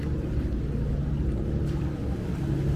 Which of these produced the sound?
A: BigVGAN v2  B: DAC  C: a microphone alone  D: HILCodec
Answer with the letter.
C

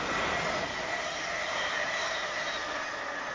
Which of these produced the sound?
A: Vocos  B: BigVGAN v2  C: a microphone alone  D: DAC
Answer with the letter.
C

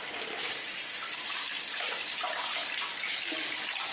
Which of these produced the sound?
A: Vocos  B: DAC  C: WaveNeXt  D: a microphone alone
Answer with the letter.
D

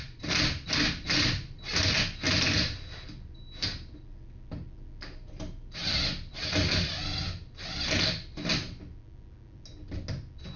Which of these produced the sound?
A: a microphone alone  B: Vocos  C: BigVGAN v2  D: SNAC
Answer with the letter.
A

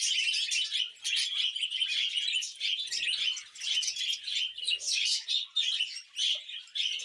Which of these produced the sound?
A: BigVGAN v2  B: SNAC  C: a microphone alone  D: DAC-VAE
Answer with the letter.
C